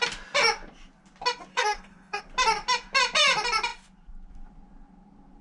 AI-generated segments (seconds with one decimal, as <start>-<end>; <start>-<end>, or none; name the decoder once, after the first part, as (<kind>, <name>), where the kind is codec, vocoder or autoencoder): 1.5-2.2 (codec, SNAC)